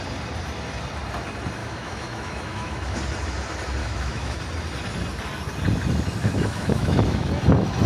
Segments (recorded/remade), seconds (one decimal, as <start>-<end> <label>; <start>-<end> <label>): 0.0-1.6 recorded; 1.6-3.0 remade; 3.0-3.8 recorded; 3.8-4.4 remade; 4.4-6.2 recorded; 6.2-7.3 remade; 7.3-7.9 recorded